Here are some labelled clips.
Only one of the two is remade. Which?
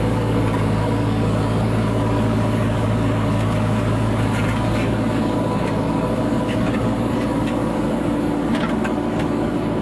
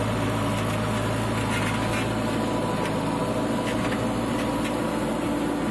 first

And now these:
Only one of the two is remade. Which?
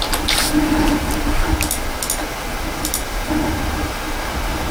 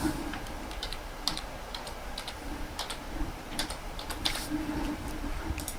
second